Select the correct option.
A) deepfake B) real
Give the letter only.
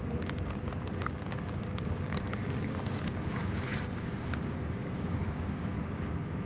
A